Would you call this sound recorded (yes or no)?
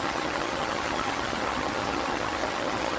no